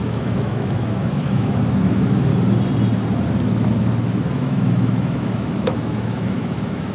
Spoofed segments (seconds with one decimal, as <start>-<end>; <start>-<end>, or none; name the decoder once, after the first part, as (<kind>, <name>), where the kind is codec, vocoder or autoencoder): 0.0-2.3 (autoencoder, DAC-VAE); 4.4-6.9